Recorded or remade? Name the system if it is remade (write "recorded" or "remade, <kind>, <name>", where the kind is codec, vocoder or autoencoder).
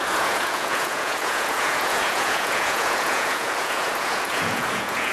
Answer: remade, vocoder, Vocos